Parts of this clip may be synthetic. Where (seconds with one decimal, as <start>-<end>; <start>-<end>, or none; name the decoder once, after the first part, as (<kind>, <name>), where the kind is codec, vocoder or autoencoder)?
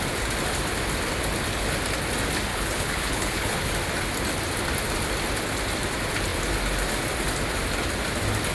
2.5-3.7 (codec, HILCodec)